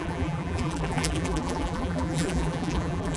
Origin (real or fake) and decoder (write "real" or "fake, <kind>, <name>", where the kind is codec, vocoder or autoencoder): fake, vocoder, BigVGAN v2